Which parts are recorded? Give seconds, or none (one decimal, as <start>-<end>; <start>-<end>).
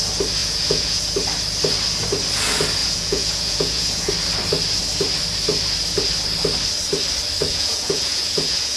0.0-0.4; 1.0-2.8; 4.1-7.4